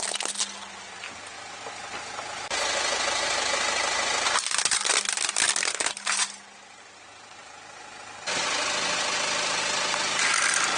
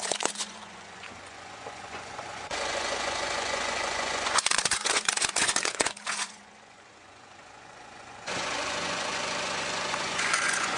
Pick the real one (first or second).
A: first